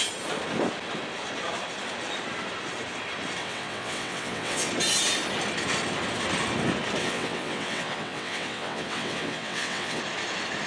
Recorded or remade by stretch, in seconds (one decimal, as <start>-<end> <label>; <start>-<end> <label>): 0.0-3.4 recorded; 3.4-4.7 remade; 4.7-7.0 recorded; 7.0-10.0 remade; 10.0-10.7 recorded